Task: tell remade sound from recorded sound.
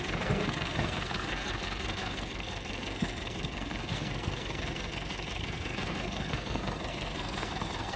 remade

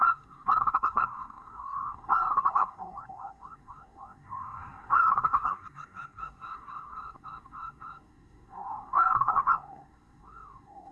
remade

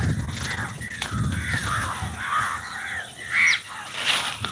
recorded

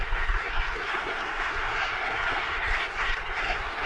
remade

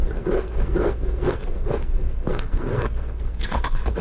remade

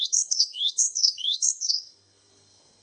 remade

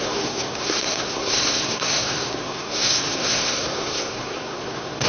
remade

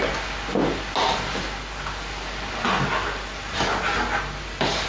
recorded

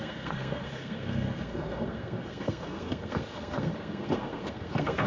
remade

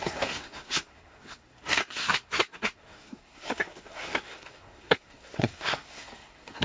remade